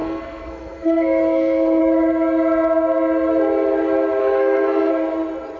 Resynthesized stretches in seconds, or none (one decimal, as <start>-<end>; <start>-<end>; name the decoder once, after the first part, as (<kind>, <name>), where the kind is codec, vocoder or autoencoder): 0.0-1.8 (codec, SNAC); 4.2-4.9